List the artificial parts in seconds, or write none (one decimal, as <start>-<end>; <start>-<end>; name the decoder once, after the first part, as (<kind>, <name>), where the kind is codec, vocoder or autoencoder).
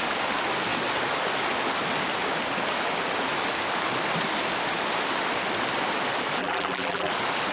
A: 6.4-7.1 (vocoder, BigVGAN v2)